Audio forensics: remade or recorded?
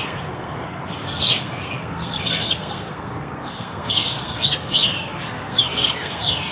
remade